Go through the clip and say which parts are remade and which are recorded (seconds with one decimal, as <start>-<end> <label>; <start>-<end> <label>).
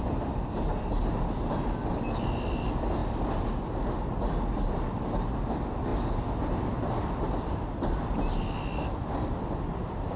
0.0-10.2 recorded